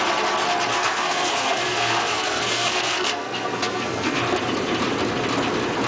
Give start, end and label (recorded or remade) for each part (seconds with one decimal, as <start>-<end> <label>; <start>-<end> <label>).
0.0-0.7 recorded; 0.7-4.2 remade; 4.2-5.9 recorded